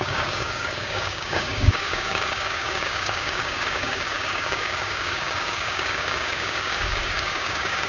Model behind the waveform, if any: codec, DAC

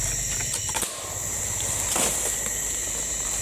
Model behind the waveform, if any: vocoder, BigVGAN v2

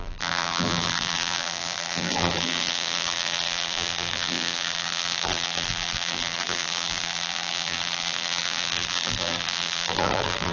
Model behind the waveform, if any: vocoder, BigVGAN v2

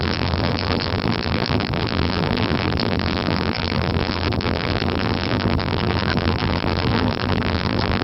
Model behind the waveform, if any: vocoder, BigVGAN v2